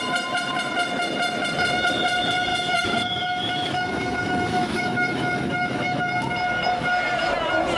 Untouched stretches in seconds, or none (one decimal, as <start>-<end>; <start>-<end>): 0.0-2.5; 6.0-7.8

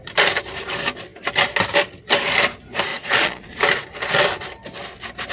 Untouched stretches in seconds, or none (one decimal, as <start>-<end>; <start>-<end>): 0.0-2.9; 3.6-5.3

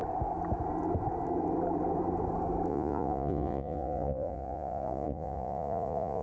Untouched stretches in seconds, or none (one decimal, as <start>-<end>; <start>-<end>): 0.0-2.7

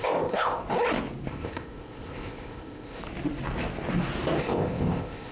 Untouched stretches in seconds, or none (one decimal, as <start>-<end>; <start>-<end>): 0.6-1.3; 3.0-4.4

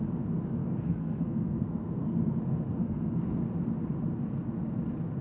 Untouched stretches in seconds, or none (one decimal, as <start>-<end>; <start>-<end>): 0.0-0.6; 3.4-5.2